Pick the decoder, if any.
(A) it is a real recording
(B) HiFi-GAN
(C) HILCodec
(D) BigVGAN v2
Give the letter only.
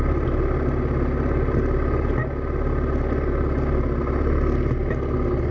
A